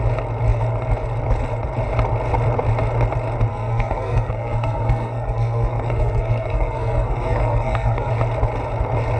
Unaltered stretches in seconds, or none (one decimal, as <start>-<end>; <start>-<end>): 0.0-3.5; 8.1-9.2